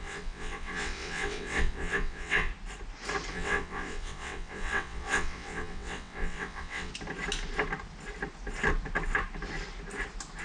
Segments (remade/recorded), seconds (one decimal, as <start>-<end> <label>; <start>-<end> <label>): 0.0-2.5 remade; 2.5-3.3 recorded; 3.3-6.9 remade; 6.9-10.4 recorded